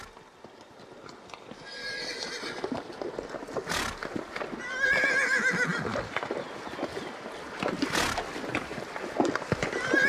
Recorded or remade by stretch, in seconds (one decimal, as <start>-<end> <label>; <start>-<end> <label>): 0.0-10.1 recorded